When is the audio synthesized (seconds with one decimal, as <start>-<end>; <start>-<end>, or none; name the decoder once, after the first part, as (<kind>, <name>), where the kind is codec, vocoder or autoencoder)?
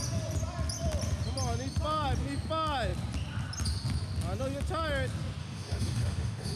5.4-6.6 (autoencoder, DAC-VAE)